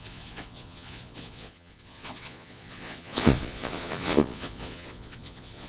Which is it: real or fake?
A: fake